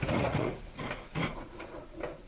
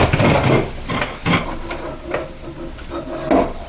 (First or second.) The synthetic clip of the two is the first